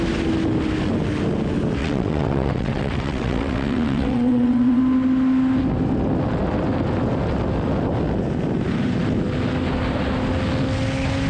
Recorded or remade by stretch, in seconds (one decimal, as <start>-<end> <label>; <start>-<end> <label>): 0.0-1.8 recorded; 1.8-4.8 remade; 4.8-11.3 recorded